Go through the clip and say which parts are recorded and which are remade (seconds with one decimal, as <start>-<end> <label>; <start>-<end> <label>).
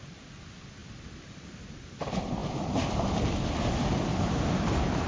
0.0-5.1 recorded